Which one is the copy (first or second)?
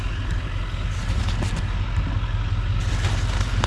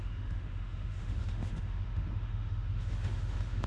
second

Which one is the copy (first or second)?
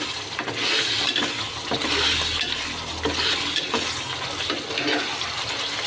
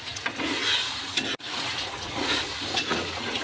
second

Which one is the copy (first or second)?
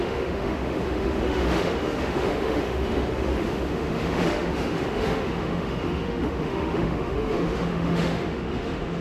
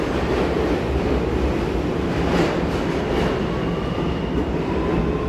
first